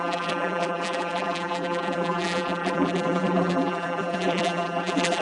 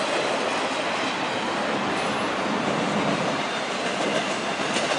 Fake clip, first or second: first